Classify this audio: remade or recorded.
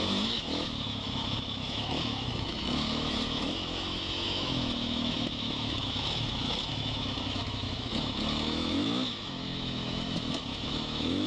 remade